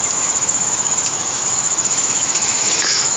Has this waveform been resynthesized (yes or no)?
yes